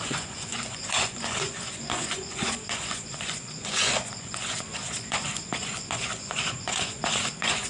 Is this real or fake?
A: fake